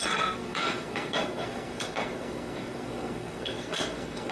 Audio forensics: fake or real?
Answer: fake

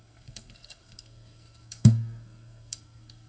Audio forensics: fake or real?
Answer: fake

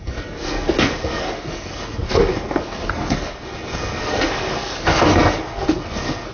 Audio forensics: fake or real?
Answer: fake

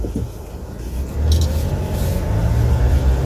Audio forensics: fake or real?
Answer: real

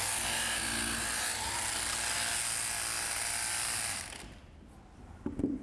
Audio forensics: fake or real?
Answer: real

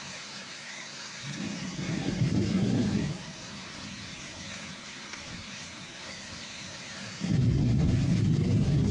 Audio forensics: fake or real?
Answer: fake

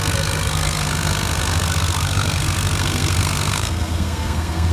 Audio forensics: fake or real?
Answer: fake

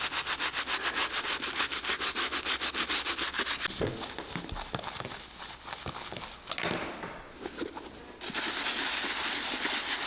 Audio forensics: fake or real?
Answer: real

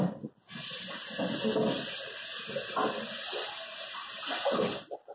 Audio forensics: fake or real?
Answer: real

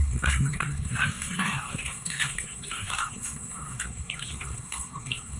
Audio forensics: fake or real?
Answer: fake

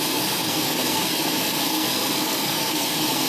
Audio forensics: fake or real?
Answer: fake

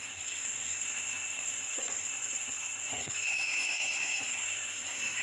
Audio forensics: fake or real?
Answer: fake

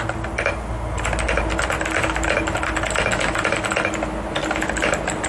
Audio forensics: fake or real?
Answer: real